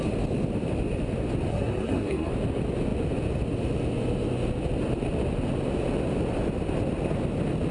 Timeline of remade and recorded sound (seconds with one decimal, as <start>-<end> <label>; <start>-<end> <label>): 0.0-1.5 recorded; 1.5-2.3 remade; 2.3-7.7 recorded

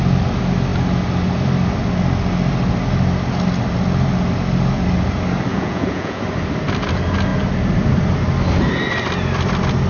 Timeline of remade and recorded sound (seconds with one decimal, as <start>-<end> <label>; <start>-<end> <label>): 0.0-5.5 recorded; 5.5-6.2 remade; 6.2-9.9 recorded

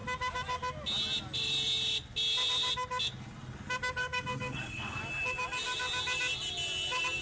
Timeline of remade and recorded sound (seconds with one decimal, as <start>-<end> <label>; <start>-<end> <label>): 0.0-4.0 recorded; 4.0-5.0 remade; 5.0-7.2 recorded